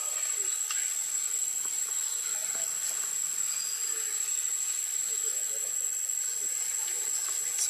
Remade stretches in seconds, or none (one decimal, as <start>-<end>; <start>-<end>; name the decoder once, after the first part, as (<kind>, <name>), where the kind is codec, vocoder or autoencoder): 0.0-0.5 (vocoder, BigVGAN v2)